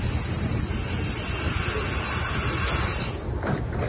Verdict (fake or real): real